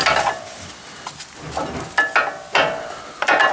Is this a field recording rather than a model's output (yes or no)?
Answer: yes